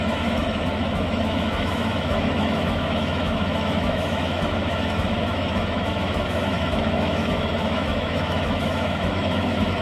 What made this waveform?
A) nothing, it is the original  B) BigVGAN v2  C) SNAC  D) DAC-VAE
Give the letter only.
D